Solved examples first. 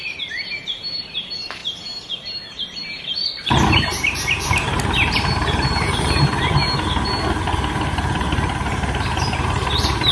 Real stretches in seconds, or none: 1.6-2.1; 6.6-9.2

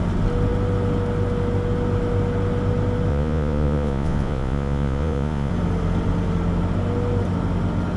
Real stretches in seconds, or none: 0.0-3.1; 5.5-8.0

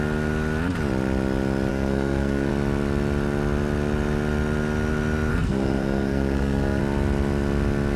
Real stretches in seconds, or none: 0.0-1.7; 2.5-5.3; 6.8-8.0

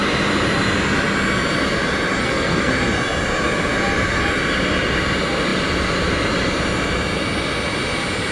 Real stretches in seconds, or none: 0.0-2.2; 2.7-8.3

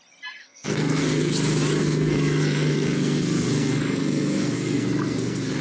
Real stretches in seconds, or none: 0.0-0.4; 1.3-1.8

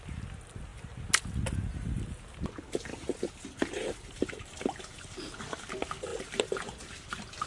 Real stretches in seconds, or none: 0.0-7.5